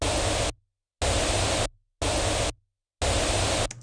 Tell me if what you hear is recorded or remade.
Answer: recorded